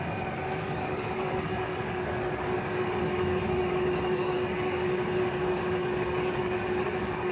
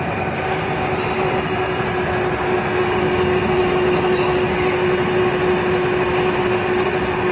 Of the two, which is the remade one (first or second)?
first